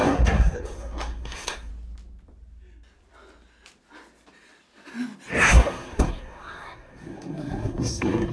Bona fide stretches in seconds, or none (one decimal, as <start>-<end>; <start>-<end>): 1.7-5.4